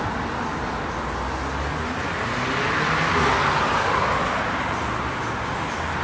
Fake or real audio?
real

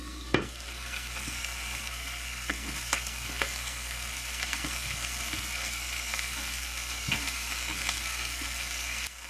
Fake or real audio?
fake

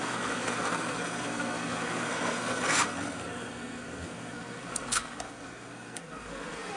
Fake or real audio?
fake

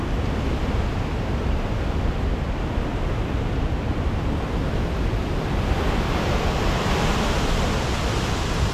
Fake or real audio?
real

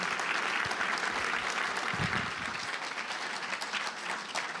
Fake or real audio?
real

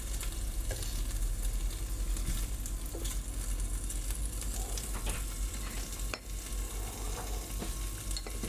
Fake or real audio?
real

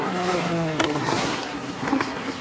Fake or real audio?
fake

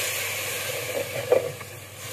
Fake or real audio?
real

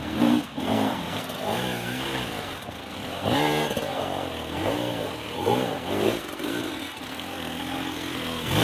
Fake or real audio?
fake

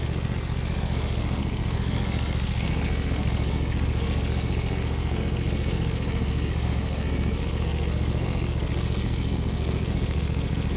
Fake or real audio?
fake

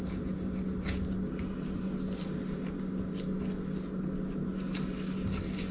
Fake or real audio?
real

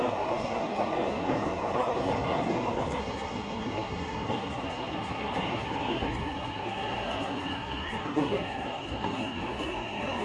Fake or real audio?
fake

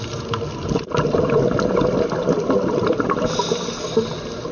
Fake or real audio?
real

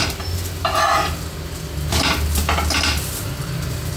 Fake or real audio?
real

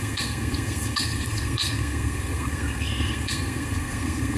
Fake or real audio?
fake